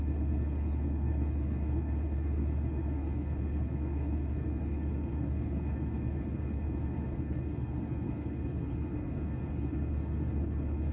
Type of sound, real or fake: fake